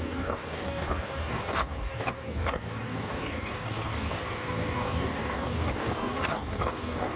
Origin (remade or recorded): remade